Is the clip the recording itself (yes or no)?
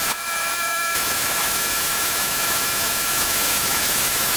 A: no